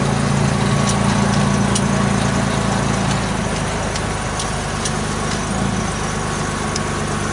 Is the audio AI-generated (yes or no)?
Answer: no